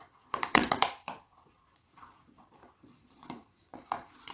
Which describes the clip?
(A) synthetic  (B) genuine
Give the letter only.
A